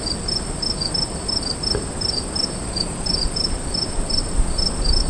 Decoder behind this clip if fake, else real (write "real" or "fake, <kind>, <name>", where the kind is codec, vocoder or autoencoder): real